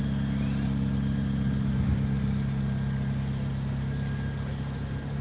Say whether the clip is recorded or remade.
recorded